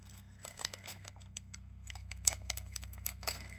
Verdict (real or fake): fake